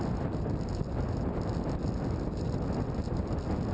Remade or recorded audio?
recorded